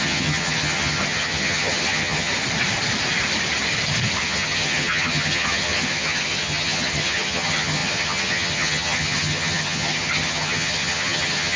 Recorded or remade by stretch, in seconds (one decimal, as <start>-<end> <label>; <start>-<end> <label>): 0.0-2.3 remade; 2.3-4.2 recorded; 4.2-11.6 remade